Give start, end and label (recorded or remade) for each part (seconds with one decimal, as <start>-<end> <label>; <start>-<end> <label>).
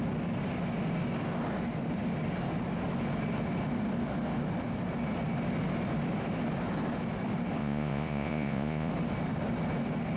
0.0-7.6 recorded; 7.6-8.9 remade; 8.9-10.2 recorded